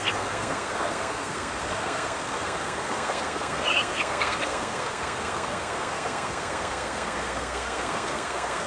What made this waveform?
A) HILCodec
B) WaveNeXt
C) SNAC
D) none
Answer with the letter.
C